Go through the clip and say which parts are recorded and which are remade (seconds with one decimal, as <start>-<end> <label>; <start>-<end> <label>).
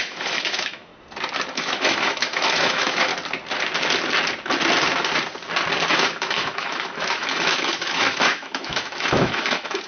0.0-0.9 remade; 0.9-1.5 recorded; 1.5-3.1 remade; 3.1-5.9 recorded; 5.9-9.9 remade